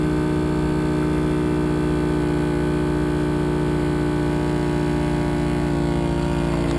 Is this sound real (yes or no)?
yes